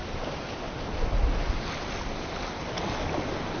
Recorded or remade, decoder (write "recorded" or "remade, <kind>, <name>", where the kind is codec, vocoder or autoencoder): recorded